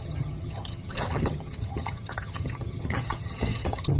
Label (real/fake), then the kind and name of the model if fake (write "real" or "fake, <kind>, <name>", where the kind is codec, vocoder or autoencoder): fake, vocoder, HiFi-GAN